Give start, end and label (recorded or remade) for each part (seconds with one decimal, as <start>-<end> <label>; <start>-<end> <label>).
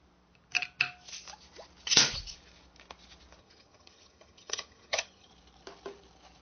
0.0-3.4 recorded; 3.4-5.3 remade; 5.3-6.4 recorded